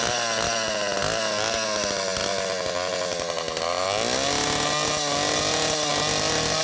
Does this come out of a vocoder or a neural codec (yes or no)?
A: no